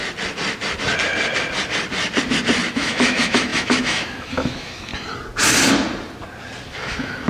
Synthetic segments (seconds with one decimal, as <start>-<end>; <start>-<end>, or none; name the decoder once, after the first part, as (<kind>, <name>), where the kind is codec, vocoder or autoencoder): 2.7-4.9 (autoencoder, DAC-VAE); 6.7-7.3